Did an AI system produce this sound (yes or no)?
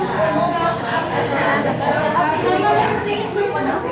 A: yes